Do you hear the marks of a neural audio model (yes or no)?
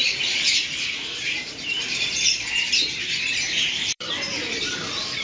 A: yes